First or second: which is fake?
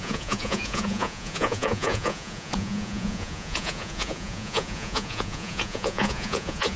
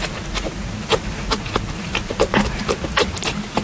first